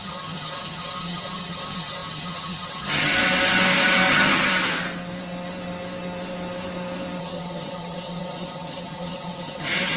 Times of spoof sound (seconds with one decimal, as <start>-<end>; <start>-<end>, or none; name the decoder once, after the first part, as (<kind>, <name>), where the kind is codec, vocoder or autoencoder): 0.0-3.1 (vocoder, HiFi-GAN); 4.1-4.5; 7.2-10.0